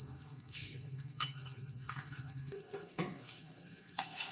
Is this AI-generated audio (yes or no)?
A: yes